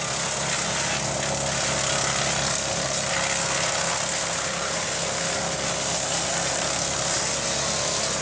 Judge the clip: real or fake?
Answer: real